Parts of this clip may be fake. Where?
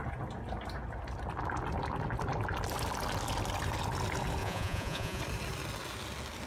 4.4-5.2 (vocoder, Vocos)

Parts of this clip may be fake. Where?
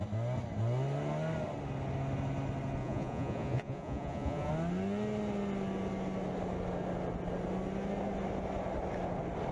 2.8-4.5 (vocoder, Vocos)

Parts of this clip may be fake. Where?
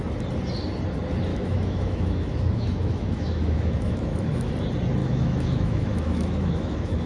1.3-4.5 (autoencoder, DAC-VAE); 5.0-7.1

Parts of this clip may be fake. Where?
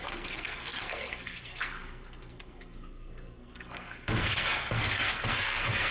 0.0-5.9 (codec, SNAC)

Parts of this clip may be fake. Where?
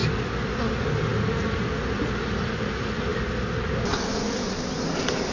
none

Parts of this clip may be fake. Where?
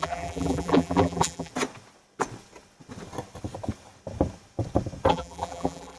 0.0-1.5 (vocoder, BigVGAN v2); 5.1-6.0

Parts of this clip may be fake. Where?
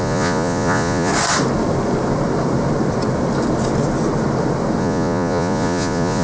0.0-1.1 (vocoder, Vocos); 4.8-6.2